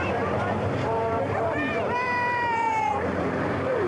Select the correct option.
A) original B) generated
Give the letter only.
B